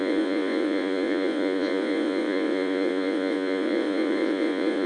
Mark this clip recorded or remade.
remade